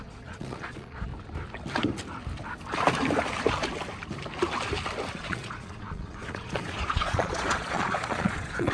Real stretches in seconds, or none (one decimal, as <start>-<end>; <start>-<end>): 1.1-5.1